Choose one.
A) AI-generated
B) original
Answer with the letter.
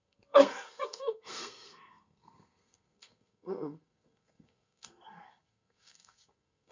A